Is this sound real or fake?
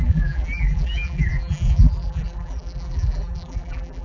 fake